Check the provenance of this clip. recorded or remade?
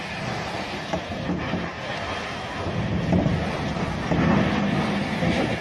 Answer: recorded